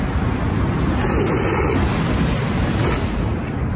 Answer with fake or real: real